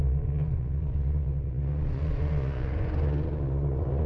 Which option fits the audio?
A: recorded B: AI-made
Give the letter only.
B